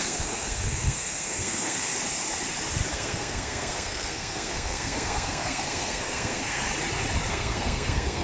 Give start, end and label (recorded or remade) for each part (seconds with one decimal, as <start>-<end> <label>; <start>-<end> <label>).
0.0-1.9 remade; 1.9-2.9 recorded; 2.9-6.7 remade; 6.7-7.3 recorded; 7.3-8.2 remade